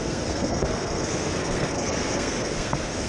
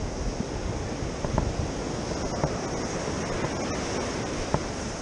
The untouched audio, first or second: second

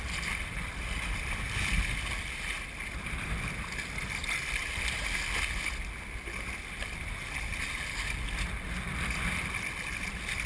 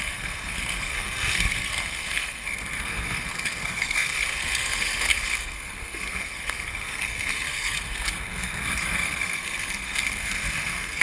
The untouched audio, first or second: first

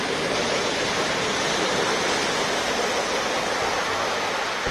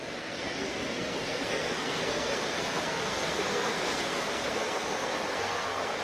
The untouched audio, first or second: first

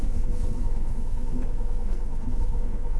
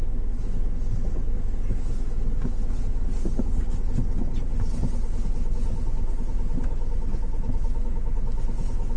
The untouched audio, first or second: second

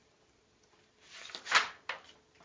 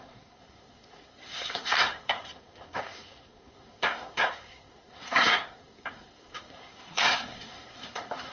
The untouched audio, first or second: first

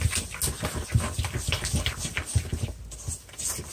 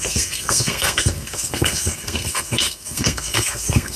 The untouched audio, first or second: first